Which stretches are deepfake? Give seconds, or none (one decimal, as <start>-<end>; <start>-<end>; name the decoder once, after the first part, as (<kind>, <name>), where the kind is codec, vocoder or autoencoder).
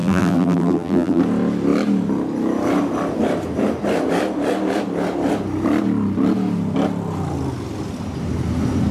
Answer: 0.0-1.2 (vocoder, BigVGAN v2)